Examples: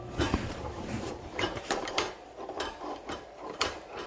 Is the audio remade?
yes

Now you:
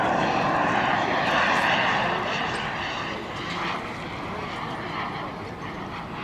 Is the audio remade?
no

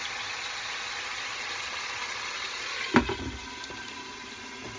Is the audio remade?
no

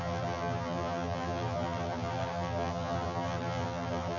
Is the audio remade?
yes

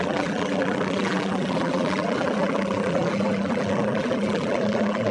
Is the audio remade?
yes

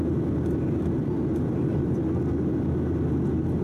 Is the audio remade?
no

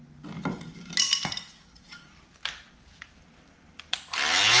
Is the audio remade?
no